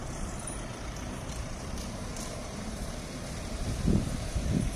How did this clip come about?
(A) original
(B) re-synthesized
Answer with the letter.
B